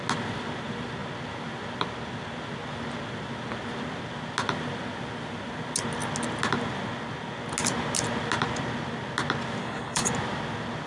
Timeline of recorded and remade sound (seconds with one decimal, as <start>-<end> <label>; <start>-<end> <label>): 0.0-9.6 recorded; 9.6-10.1 remade; 10.1-10.9 recorded